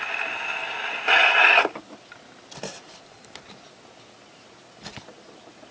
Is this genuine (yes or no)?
yes